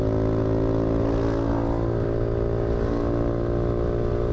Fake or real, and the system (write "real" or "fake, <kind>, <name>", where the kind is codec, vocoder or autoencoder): real